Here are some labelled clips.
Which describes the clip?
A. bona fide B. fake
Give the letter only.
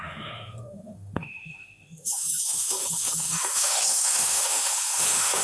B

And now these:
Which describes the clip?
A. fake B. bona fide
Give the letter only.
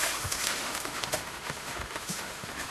A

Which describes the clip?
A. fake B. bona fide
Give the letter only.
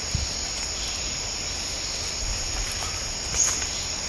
B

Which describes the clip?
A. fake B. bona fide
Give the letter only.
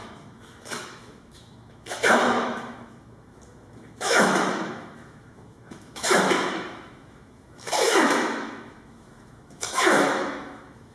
A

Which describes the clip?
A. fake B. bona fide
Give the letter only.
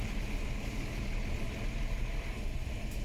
B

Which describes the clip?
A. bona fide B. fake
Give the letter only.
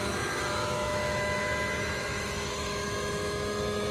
B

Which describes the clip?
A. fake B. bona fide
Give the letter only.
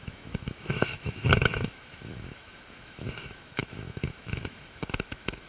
A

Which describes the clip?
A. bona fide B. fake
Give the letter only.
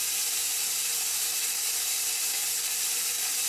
A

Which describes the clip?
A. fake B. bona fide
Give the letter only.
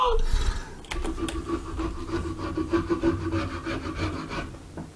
B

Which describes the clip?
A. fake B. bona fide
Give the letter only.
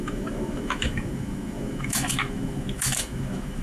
A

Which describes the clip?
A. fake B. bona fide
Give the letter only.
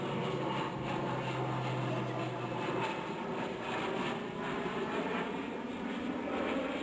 B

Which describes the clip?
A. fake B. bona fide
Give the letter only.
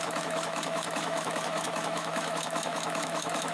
A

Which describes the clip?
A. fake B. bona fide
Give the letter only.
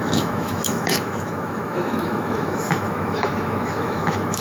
A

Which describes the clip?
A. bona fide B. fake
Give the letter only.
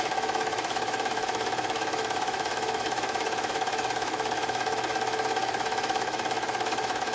B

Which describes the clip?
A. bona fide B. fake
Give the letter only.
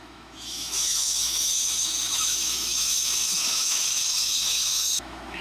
B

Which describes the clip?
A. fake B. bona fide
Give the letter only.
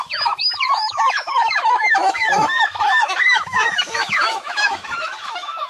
A